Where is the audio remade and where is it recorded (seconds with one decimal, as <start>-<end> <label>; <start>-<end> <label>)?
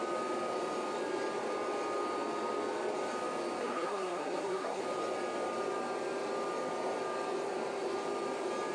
0.0-3.6 recorded; 3.6-4.8 remade; 4.8-8.7 recorded